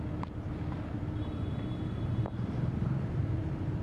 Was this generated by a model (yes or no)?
no